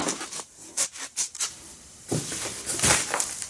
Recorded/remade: recorded